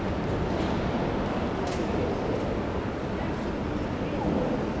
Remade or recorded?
recorded